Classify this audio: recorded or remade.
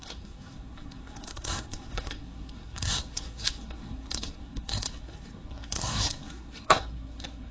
remade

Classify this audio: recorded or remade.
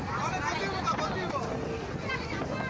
recorded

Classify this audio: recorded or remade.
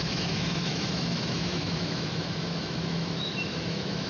remade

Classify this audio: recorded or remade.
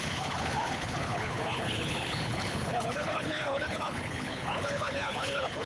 remade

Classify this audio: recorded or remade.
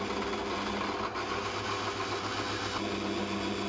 recorded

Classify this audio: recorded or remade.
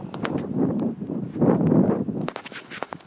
recorded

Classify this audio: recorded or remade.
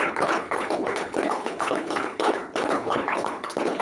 remade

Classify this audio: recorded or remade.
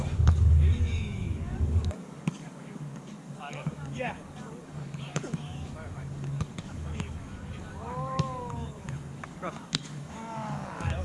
remade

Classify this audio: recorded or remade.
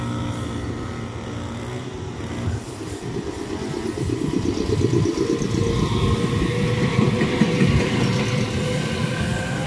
recorded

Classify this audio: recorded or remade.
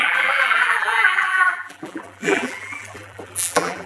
remade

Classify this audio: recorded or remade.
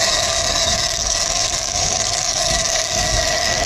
remade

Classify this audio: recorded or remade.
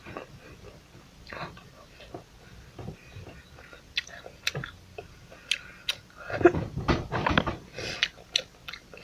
recorded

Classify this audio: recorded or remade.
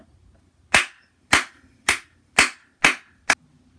recorded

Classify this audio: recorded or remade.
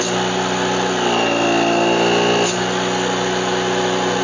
recorded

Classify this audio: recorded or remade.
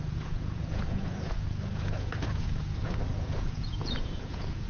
remade